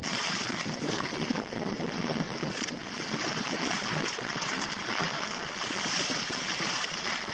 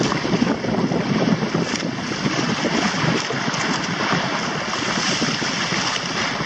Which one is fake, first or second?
first